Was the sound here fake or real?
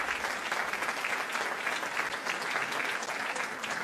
real